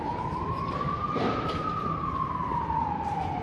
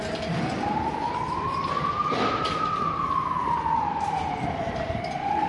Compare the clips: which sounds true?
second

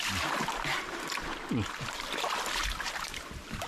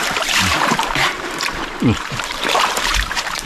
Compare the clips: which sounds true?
first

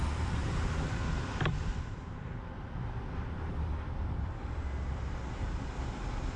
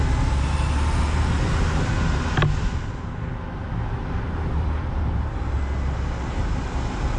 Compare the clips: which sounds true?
second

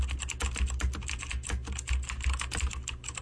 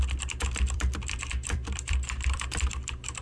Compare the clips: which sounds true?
first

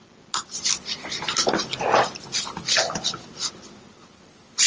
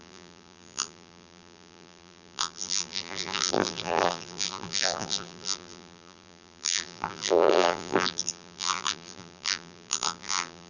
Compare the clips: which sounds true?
first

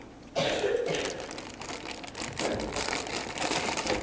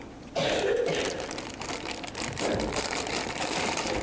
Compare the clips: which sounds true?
first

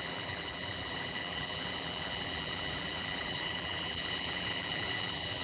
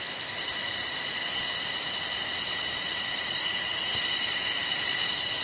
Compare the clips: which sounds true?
second